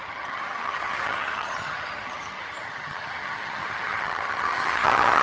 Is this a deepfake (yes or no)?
yes